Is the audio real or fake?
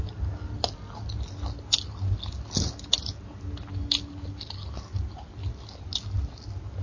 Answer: real